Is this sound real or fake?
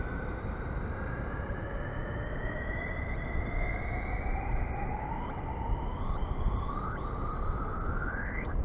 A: real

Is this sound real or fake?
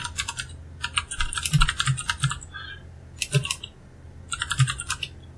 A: real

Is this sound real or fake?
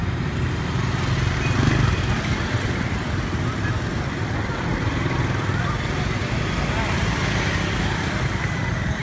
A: real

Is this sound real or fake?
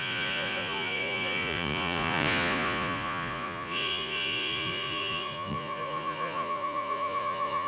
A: fake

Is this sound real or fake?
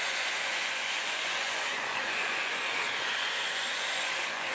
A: fake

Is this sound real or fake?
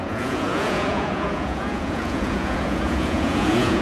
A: fake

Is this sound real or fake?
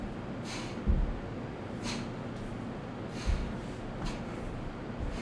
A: real